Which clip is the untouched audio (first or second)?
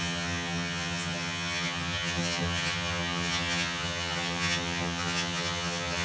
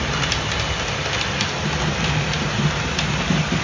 second